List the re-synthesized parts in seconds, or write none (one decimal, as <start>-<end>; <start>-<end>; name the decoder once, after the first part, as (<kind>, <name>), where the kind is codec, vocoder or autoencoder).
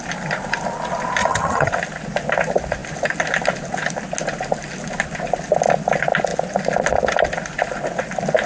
1.2-1.7 (vocoder, HiFi-GAN)